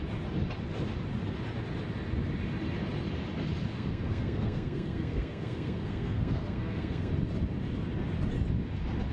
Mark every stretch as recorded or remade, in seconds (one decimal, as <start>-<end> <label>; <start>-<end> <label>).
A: 0.0-3.7 recorded; 3.7-7.1 remade; 7.1-9.1 recorded